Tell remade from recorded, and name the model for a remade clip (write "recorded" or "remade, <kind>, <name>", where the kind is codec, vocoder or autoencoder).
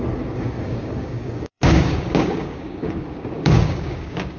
remade, codec, DAC